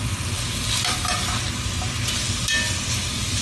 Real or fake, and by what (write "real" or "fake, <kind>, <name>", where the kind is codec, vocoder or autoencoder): real